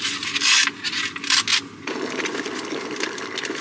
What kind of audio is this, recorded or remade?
recorded